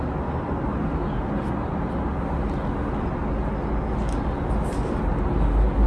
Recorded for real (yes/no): yes